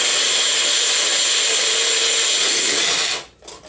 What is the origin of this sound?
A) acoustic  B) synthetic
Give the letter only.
A